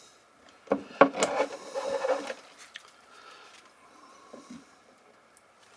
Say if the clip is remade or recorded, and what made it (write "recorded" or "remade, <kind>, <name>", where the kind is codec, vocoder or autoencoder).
recorded